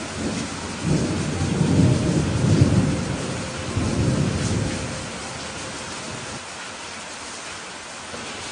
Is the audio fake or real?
real